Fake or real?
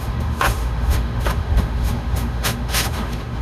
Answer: fake